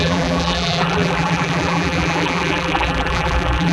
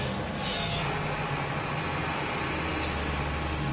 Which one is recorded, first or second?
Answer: second